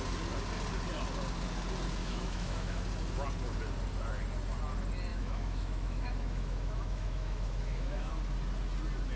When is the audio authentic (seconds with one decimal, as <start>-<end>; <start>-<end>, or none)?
0.0-2.0; 2.8-5.1; 8.1-9.2